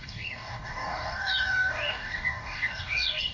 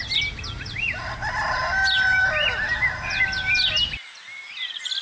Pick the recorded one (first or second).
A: second